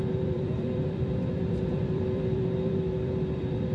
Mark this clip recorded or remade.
remade